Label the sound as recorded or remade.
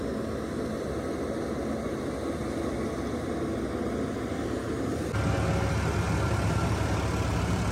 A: recorded